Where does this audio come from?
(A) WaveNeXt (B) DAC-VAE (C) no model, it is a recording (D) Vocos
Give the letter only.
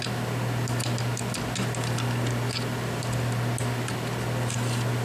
C